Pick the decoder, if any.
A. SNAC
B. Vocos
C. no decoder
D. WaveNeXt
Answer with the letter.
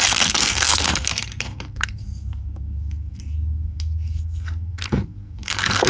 A